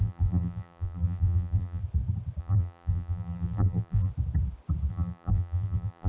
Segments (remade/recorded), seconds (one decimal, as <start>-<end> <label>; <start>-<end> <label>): 0.0-1.8 remade; 1.8-2.4 recorded; 2.4-4.1 remade; 4.1-4.9 recorded; 4.9-6.1 remade